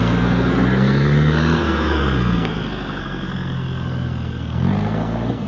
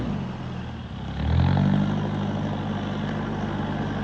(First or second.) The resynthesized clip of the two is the first